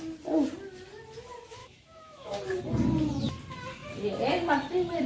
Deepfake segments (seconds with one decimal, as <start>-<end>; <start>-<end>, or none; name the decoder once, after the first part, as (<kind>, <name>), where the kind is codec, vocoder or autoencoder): 1.6-2.4 (autoencoder, DAC-VAE)